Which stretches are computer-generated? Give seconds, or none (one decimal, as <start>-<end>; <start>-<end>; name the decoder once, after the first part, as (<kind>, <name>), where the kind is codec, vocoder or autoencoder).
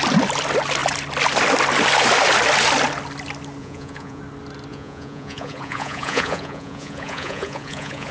3.6-4.2 (vocoder, Vocos); 4.7-8.1